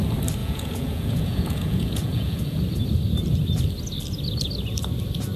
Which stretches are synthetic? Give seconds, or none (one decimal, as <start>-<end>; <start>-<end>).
0.4-2.6